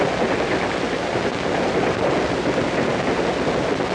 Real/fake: real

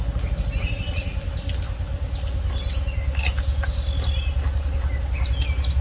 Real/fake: real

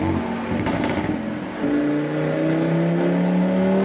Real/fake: real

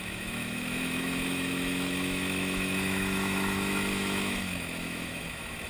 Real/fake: fake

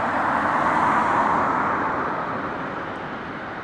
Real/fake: real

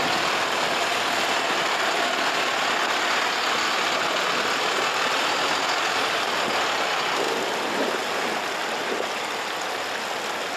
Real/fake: real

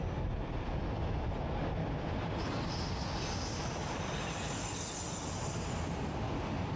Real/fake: real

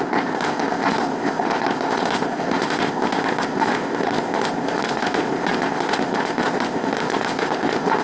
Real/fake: fake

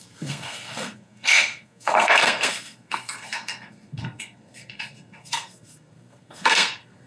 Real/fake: fake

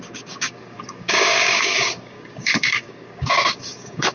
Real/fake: fake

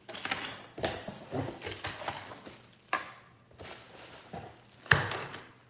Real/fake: real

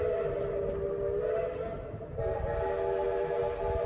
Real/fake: real